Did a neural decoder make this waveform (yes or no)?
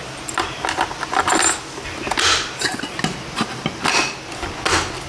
no